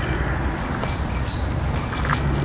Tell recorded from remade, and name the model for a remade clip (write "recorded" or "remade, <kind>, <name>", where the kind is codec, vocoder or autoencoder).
recorded